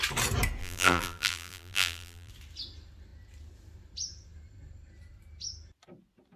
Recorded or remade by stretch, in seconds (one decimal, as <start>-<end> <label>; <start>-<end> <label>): 0.0-0.6 recorded; 0.6-2.3 remade; 2.3-6.4 recorded